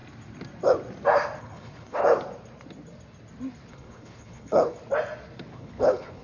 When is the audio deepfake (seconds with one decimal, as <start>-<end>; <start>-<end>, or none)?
1.4-2.0; 3.7-4.8; 5.5-6.2